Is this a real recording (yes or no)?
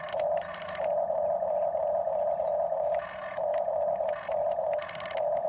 yes